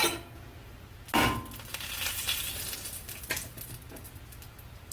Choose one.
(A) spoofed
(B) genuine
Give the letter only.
B